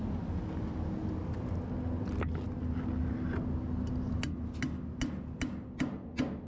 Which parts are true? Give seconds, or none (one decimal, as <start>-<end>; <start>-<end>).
0.0-6.5